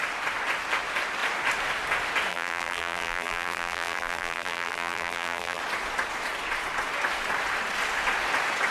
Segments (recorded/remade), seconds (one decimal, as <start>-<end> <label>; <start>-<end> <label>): 0.0-2.3 recorded; 2.3-5.6 remade; 5.6-8.7 recorded